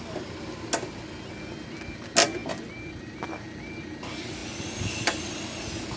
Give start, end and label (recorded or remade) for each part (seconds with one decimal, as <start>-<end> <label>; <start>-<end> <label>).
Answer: 0.0-6.0 recorded